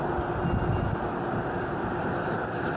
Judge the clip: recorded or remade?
remade